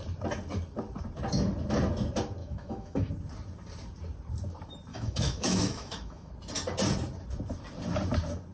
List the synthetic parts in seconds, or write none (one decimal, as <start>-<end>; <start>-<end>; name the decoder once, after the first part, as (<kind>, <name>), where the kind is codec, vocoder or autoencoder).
2.4-3.1 (autoencoder, DAC-VAE); 4.9-6.3